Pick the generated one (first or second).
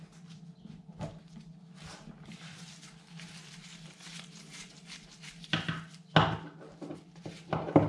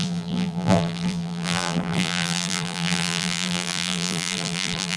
second